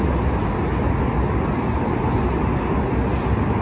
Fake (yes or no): no